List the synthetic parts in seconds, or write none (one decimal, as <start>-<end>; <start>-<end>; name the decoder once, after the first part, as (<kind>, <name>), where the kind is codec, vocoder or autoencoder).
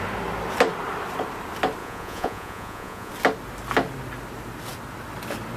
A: 1.8-3.1 (vocoder, Vocos)